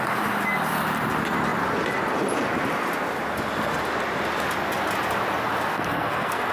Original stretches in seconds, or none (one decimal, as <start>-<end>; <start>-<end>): 0.0-5.7